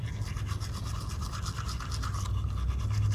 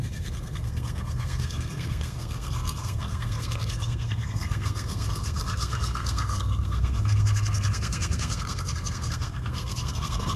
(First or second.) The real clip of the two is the first